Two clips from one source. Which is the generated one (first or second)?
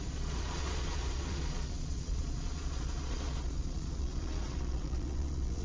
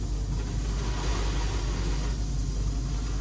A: first